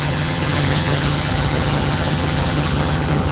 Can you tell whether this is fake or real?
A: fake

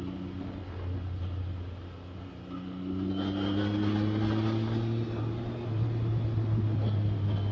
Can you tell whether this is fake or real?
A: real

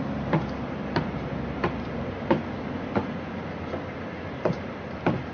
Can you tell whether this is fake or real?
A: real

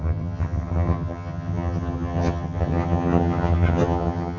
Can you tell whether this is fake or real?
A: fake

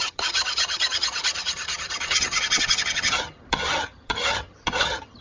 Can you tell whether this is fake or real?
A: fake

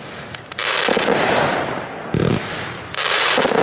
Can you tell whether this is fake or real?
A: real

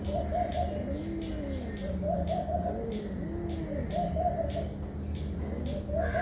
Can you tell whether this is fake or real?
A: real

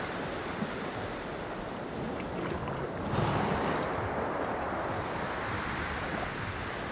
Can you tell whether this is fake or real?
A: real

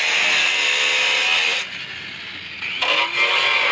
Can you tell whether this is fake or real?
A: real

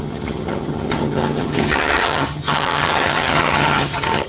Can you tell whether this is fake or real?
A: fake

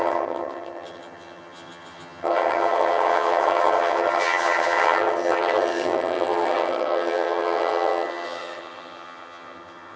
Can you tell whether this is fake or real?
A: fake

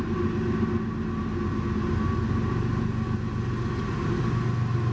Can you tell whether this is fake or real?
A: real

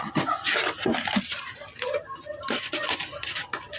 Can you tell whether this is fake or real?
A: real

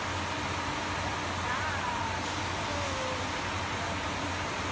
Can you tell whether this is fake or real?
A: real